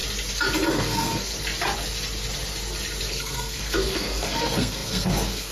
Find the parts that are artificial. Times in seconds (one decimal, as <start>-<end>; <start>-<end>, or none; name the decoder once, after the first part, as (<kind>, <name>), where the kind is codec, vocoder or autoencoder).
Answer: 0.7-1.3 (codec, SNAC); 3.1-5.5